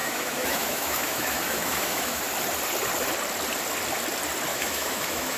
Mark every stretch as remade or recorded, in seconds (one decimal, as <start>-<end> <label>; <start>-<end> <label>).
0.0-2.2 remade; 2.2-4.5 recorded; 4.5-5.4 remade